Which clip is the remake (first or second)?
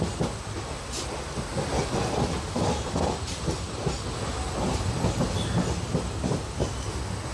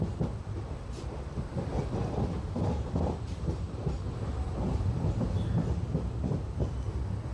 second